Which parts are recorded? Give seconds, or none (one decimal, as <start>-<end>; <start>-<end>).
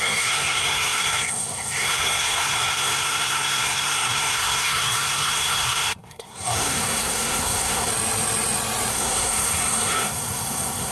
7.9-8.9